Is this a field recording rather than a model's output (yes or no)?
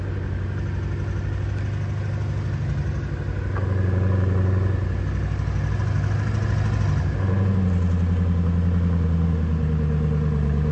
yes